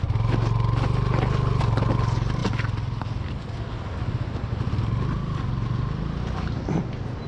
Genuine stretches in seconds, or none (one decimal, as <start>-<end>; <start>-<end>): 0.0-7.3